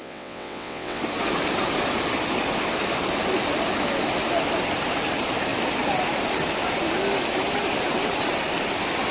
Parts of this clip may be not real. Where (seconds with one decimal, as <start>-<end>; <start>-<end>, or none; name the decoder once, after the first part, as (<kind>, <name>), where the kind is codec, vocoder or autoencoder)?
0.0-1.0 (vocoder, WaveNeXt)